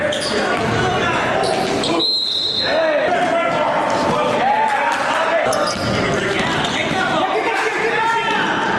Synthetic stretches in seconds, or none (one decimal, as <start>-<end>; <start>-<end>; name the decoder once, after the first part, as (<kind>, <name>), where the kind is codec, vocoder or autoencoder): none

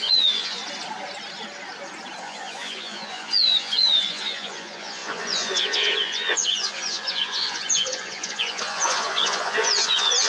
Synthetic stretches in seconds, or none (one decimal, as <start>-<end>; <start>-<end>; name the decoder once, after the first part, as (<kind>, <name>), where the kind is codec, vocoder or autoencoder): 0.0-0.6 (vocoder, Vocos); 2.2-10.3

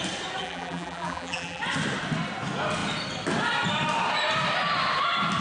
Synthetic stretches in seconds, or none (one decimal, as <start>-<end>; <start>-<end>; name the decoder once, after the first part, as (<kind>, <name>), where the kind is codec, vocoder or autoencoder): 0.4-1.6 (vocoder, BigVGAN v2)

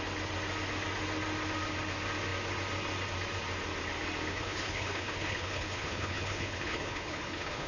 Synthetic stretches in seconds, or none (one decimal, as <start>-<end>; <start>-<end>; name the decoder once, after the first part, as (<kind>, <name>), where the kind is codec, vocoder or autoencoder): 4.3-7.7 (codec, HILCodec)

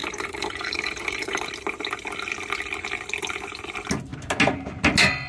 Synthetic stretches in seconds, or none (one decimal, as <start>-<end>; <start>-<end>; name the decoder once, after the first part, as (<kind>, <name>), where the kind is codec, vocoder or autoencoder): 0.0-1.4 (vocoder, BigVGAN v2)

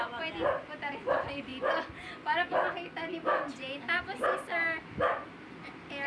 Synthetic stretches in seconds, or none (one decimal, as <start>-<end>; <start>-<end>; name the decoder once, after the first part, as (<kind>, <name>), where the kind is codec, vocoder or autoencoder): none